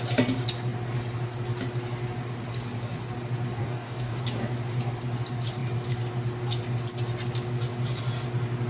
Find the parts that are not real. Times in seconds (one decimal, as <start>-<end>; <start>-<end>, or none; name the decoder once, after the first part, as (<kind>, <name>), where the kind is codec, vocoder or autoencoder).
3.6-4.2 (codec, DAC)